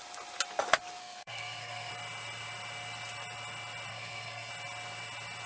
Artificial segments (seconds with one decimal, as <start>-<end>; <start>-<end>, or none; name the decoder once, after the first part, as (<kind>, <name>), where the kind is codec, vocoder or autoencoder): 1.0-1.9 (codec, SNAC); 3.9-4.5